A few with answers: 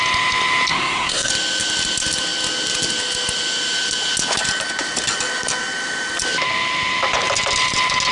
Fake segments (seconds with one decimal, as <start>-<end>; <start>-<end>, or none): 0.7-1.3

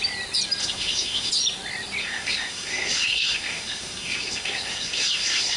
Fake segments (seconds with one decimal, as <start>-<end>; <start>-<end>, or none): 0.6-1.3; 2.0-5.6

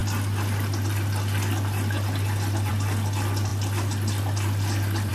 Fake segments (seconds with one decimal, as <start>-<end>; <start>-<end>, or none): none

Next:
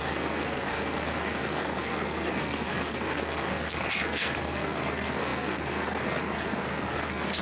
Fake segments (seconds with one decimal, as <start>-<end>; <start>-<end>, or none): 0.0-7.4

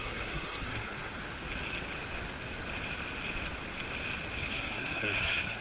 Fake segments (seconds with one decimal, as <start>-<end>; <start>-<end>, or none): 0.0-1.1; 4.5-5.6

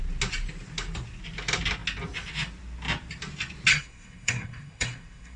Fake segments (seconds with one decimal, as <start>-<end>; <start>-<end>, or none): 3.7-5.4